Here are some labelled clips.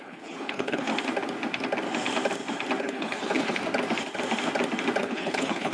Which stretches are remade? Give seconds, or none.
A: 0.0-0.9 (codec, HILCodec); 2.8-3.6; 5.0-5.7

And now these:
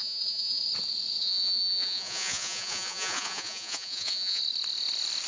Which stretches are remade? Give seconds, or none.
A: 0.0-0.6 (vocoder, Vocos); 1.2-4.4

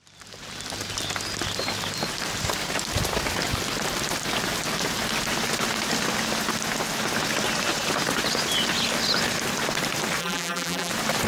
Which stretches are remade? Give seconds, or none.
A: 10.2-10.9 (vocoder, BigVGAN v2)

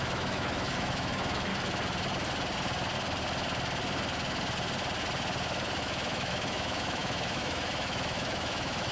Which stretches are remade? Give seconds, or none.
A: 0.0-1.5 (autoencoder, DAC-VAE); 5.8-8.9